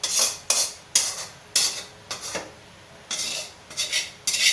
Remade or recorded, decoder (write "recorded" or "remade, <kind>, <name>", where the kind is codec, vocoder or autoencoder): recorded